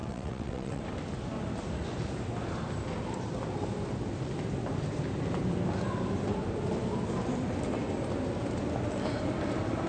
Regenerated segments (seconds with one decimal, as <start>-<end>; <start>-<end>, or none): 0.0-0.8